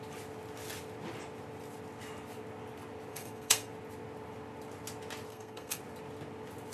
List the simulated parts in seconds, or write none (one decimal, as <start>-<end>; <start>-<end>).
3.1-3.7; 5.3-5.8